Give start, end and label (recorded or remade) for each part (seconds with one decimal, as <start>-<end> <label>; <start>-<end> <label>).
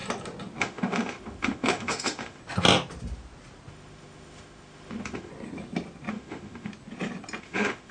0.0-0.6 recorded; 0.6-2.4 remade; 2.4-3.7 recorded; 3.7-5.3 remade; 5.3-6.1 recorded; 6.1-6.7 remade; 6.7-7.4 recorded; 7.4-7.9 remade